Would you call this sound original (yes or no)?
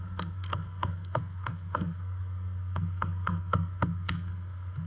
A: no